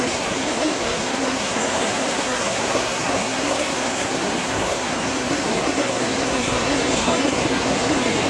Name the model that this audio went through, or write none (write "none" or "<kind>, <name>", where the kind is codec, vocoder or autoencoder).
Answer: codec, SNAC